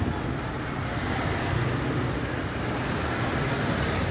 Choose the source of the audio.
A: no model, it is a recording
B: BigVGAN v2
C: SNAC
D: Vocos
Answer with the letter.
A